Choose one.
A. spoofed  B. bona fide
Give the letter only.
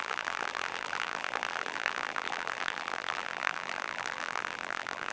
A